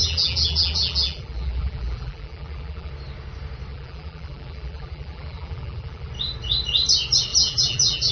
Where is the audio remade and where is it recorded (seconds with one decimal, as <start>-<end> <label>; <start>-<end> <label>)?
0.0-2.9 remade; 2.9-3.7 recorded; 3.7-6.1 remade; 6.1-7.3 recorded; 7.3-8.1 remade